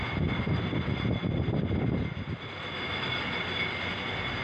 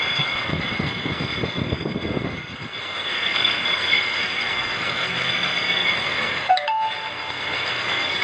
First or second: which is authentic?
first